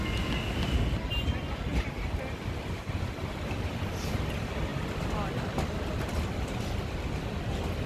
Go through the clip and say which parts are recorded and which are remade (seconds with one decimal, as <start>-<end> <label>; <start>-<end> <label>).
0.0-7.9 recorded